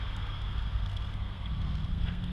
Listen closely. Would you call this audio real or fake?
fake